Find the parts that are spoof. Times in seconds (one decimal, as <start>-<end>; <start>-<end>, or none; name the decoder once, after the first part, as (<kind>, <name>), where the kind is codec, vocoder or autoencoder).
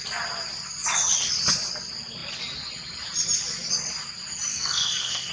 4.5-5.3 (codec, SNAC)